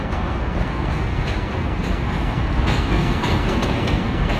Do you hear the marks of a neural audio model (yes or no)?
yes